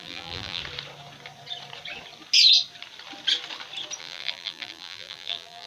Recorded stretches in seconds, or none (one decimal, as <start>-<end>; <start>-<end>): 0.6-4.0